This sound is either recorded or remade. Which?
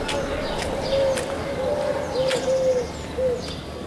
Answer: recorded